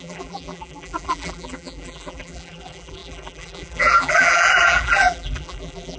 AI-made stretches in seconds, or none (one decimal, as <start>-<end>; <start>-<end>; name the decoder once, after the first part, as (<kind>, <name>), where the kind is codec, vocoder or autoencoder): 0.0-6.0 (vocoder, BigVGAN v2)